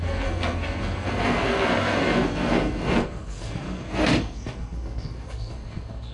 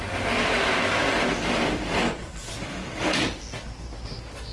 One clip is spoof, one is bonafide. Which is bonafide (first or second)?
second